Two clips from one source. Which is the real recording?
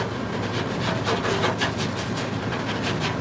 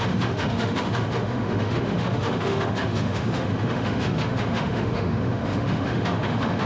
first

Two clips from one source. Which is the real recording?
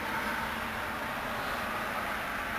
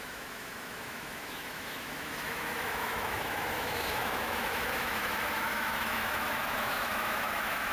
first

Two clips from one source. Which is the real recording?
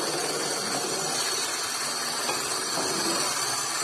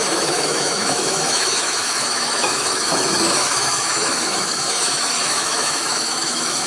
first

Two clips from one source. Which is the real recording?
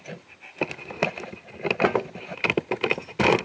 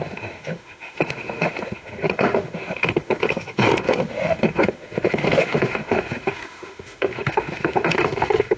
first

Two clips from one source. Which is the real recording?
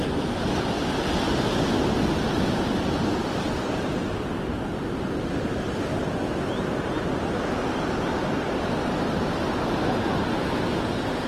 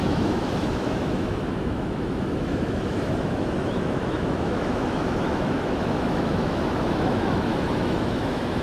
first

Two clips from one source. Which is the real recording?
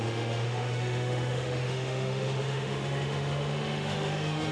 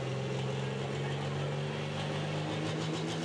second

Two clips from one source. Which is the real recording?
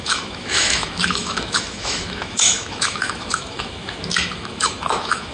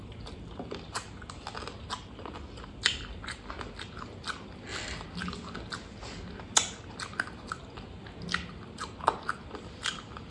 second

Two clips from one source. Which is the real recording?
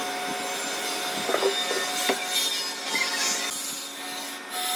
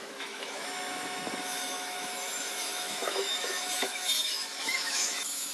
first